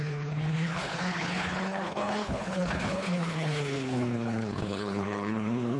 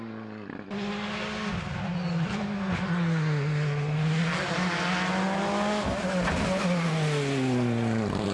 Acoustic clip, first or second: second